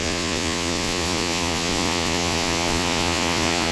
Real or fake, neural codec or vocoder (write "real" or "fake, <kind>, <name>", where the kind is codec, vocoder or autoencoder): fake, vocoder, Vocos